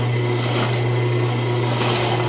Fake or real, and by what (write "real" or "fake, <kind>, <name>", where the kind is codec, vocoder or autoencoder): real